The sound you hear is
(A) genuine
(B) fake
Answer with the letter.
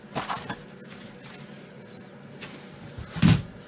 A